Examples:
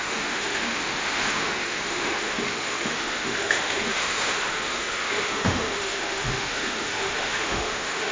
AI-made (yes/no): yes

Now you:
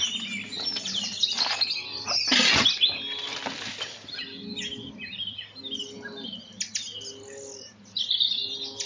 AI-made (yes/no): no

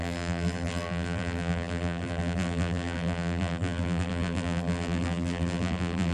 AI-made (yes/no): yes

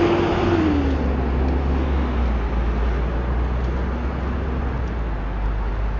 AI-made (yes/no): no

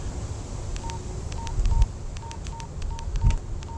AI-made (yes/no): no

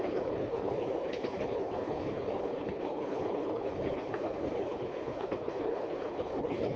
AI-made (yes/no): yes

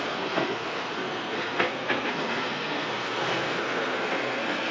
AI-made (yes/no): yes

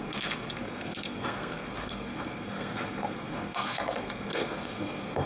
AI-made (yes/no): yes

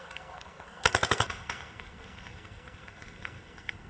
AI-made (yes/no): yes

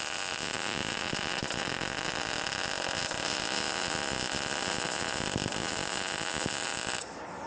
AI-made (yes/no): no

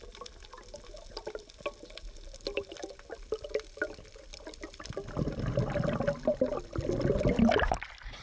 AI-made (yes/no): no